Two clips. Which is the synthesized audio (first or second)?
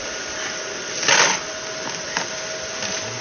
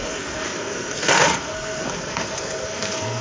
second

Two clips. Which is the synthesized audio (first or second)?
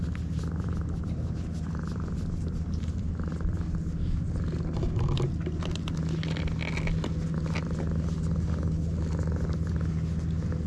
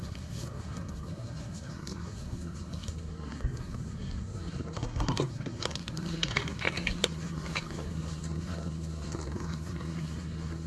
second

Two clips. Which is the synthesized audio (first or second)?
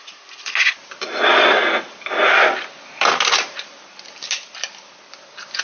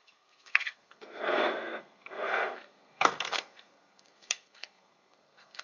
second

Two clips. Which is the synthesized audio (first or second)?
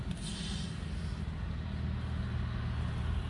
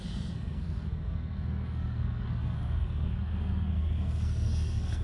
second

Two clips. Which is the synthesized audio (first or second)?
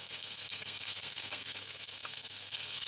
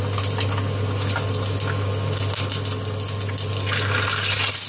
first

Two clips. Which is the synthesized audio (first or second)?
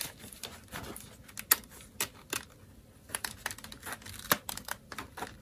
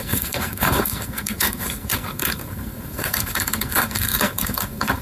second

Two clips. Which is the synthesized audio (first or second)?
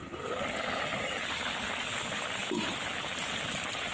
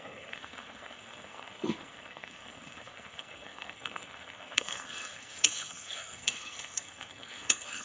second